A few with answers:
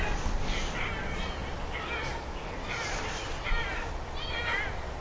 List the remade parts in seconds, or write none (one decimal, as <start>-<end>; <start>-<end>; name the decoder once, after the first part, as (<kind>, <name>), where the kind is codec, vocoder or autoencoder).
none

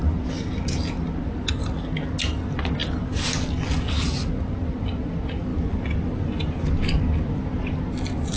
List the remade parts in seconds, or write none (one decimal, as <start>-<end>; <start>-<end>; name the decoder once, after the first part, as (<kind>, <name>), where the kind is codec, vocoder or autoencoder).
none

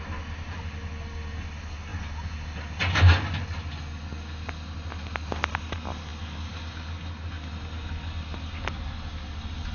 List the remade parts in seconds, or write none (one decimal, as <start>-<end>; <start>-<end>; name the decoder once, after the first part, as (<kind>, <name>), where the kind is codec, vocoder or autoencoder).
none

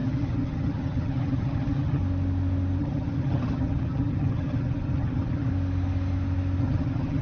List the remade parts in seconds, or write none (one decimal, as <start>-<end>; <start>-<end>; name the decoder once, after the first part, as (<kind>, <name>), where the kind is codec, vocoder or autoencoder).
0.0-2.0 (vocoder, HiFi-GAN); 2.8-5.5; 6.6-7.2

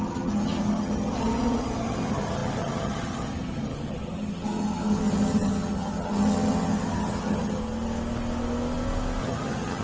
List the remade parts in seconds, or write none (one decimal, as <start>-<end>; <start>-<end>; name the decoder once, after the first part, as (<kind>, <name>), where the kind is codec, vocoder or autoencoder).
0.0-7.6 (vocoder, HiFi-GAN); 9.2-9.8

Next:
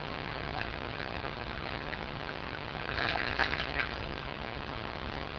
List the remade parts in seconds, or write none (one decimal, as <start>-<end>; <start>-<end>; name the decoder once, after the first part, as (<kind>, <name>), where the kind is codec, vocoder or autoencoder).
0.0-5.4 (vocoder, HiFi-GAN)

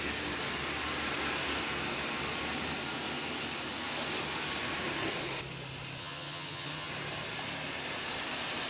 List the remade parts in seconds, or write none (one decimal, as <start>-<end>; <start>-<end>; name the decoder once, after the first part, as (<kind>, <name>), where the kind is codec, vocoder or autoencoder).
6.0-6.9 (vocoder, HiFi-GAN)